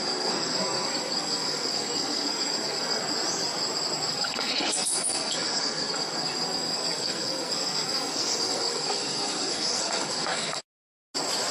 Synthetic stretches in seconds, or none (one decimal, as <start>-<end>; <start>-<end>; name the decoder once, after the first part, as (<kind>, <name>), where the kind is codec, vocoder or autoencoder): 0.0-3.0 (codec, SNAC); 4.1-10.6